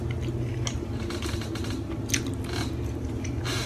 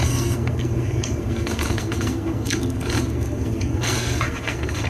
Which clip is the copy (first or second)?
second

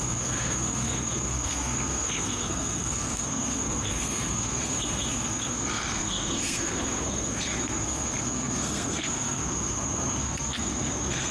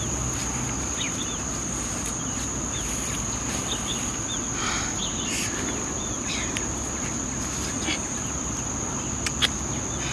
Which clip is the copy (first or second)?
first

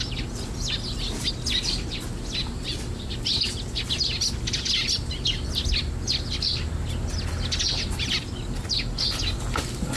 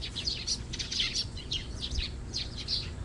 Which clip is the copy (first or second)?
second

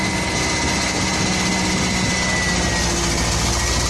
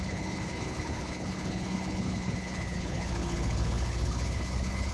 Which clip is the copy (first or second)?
second